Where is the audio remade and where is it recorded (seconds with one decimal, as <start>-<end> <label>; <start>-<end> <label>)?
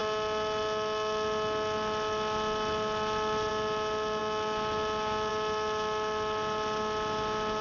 0.0-7.6 recorded